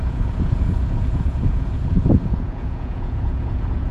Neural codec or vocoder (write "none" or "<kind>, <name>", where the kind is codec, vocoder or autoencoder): vocoder, Vocos